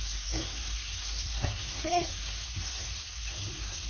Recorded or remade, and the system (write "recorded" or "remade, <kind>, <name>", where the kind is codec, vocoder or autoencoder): remade, codec, SNAC